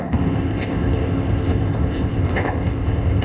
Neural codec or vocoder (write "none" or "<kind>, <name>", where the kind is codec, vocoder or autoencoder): codec, ZipCodec